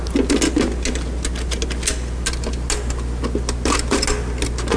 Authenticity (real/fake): real